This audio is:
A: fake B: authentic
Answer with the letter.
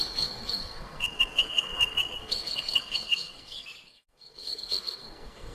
A